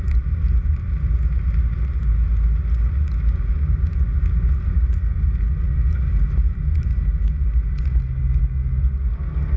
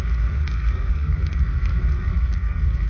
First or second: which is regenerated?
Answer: second